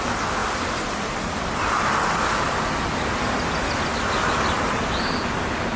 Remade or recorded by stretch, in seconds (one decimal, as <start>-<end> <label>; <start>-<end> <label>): 0.0-5.8 recorded